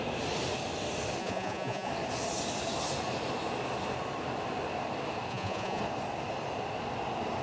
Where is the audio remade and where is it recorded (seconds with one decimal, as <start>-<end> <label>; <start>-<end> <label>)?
0.0-1.2 recorded; 1.2-1.9 remade; 1.9-5.3 recorded; 5.3-5.8 remade; 5.8-7.4 recorded

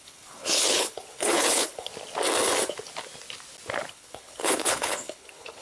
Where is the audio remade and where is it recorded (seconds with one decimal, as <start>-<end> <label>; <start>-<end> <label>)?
0.0-1.9 remade; 1.9-3.9 recorded; 3.9-5.6 remade

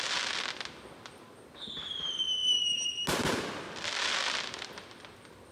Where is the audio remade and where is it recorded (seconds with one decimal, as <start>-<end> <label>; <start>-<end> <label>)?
0.0-5.5 recorded